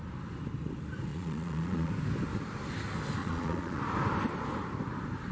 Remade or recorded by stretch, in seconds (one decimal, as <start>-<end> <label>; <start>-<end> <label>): 0.0-1.1 recorded; 1.1-1.9 remade; 1.9-3.2 recorded; 3.2-3.8 remade; 3.8-5.3 recorded